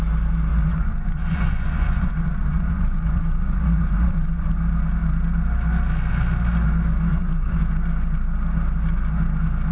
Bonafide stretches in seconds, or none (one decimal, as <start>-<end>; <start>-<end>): 0.0-0.5; 4.5-7.1; 7.6-9.7